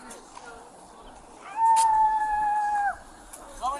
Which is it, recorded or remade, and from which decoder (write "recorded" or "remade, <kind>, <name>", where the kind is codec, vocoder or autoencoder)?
recorded